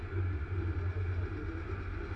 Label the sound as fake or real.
real